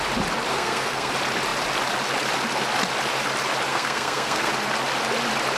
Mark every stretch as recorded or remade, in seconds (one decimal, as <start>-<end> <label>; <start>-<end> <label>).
0.0-0.5 recorded; 0.5-1.1 remade; 1.1-3.7 recorded; 3.7-4.5 remade; 4.5-5.6 recorded